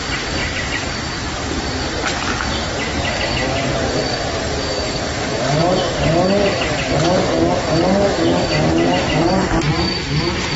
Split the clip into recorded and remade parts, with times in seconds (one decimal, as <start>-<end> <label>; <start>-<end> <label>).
0.0-0.4 recorded; 0.4-1.6 remade; 1.6-10.6 recorded